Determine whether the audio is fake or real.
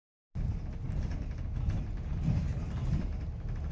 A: real